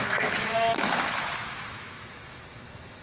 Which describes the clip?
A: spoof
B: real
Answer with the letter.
A